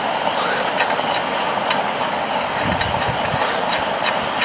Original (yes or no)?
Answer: yes